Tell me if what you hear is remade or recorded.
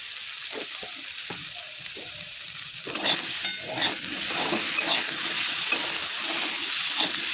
recorded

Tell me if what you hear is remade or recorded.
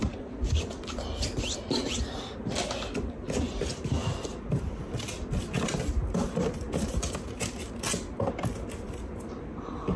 recorded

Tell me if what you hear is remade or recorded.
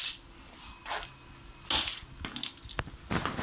recorded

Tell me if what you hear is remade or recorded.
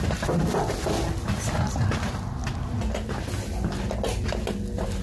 recorded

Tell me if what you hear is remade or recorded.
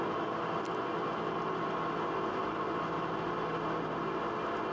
recorded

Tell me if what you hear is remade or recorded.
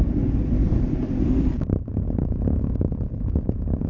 recorded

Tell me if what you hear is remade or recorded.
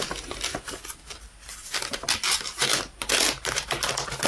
recorded